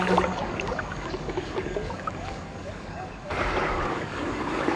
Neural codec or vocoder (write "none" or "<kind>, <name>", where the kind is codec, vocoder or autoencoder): codec, DAC